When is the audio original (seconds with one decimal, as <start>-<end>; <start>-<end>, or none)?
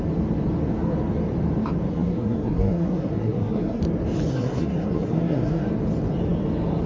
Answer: 0.0-1.9; 3.8-4.3; 5.7-6.9